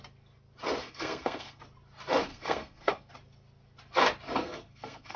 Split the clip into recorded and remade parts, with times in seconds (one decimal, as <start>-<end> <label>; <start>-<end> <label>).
0.0-0.8 recorded; 0.8-1.6 remade; 1.6-2.3 recorded; 2.3-3.1 remade; 3.1-4.4 recorded; 4.4-5.2 remade